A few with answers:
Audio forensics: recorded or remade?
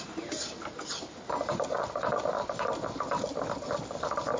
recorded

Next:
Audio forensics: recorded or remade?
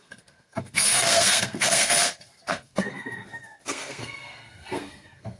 remade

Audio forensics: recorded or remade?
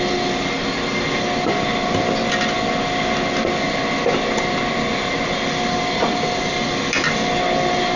recorded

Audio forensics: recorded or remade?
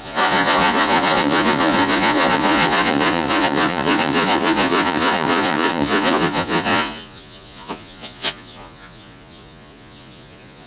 remade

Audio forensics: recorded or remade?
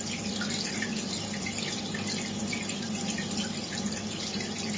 recorded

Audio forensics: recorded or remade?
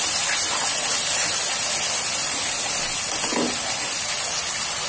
recorded